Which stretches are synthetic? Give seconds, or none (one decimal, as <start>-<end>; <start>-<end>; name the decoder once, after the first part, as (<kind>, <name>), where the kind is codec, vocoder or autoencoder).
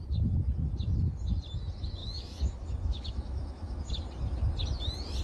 2.0-3.9 (autoencoder, DAC-VAE)